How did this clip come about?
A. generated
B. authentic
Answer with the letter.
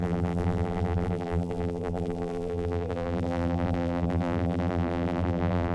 A